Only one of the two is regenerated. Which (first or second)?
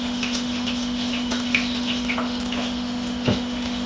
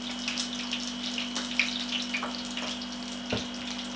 first